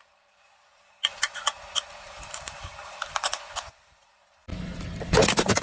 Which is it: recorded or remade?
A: remade